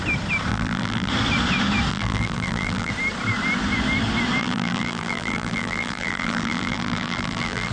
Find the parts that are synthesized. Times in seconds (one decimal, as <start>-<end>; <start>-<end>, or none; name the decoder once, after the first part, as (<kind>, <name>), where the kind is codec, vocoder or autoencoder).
0.5-1.1 (vocoder, BigVGAN v2); 1.9-2.9; 4.4-7.7